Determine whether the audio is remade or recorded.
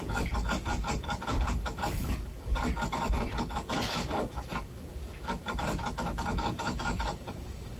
remade